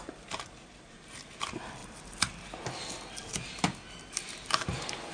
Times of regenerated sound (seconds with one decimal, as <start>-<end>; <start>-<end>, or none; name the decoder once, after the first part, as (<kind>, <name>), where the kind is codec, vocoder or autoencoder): 1.8-2.3 (vocoder, BigVGAN v2)